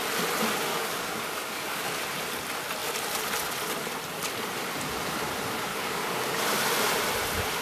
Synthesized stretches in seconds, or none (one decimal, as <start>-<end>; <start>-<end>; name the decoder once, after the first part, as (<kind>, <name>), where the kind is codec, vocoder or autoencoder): 0.7-2.0 (codec, DAC); 5.7-6.3